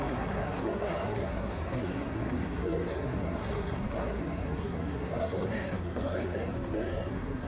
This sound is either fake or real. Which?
fake